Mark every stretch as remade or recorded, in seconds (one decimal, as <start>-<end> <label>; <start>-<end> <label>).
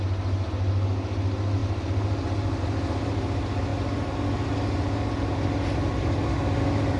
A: 0.0-7.0 recorded